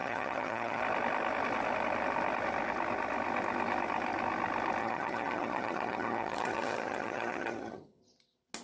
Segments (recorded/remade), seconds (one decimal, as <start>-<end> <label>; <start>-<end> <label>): 0.0-0.8 remade; 0.8-4.8 recorded; 4.8-8.0 remade; 8.0-8.6 recorded